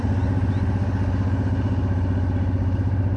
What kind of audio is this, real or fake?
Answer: real